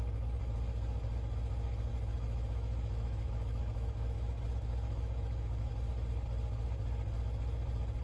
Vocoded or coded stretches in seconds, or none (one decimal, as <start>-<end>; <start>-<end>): 1.9-5.7